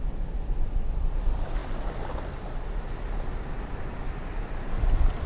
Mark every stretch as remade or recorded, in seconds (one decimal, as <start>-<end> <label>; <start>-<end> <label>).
0.0-5.3 recorded